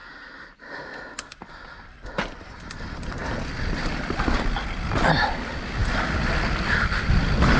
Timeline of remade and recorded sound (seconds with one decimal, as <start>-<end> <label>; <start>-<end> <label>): 0.0-7.6 recorded